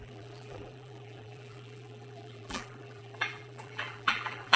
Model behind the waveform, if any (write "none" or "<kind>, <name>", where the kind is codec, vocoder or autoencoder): vocoder, BigVGAN v2